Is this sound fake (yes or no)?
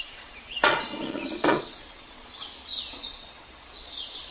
yes